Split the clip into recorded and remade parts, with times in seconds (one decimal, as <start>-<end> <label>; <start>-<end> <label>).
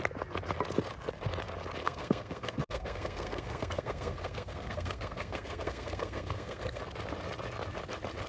0.0-1.8 recorded; 1.8-6.8 remade; 6.8-8.3 recorded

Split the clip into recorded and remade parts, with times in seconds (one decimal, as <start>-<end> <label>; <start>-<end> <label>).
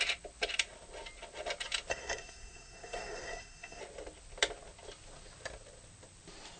0.0-1.9 recorded; 1.9-3.8 remade; 3.8-6.6 recorded